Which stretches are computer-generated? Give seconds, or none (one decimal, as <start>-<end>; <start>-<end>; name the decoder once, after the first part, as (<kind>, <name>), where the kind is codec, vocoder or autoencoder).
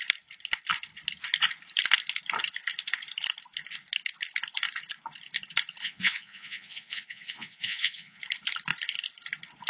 5.8-8.2 (vocoder, Vocos)